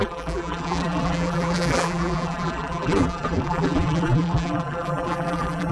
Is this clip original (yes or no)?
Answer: no